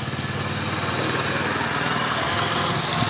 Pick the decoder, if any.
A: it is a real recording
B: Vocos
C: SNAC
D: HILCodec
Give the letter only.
A